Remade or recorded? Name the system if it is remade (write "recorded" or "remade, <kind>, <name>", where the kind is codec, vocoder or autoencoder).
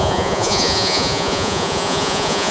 remade, vocoder, Vocos